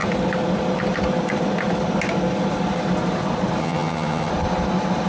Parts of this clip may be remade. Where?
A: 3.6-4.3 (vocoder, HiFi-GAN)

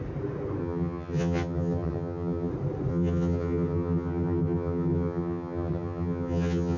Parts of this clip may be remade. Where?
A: 0.6-2.5 (vocoder, HiFi-GAN); 2.9-6.8

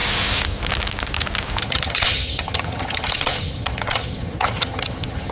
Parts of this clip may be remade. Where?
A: 1.6-5.3 (vocoder, HiFi-GAN)

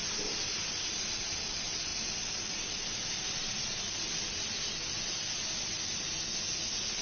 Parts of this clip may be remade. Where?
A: none